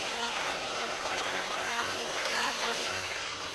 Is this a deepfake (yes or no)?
yes